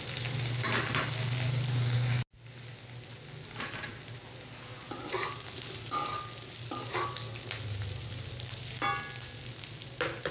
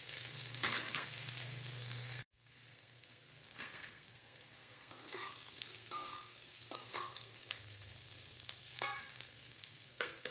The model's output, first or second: second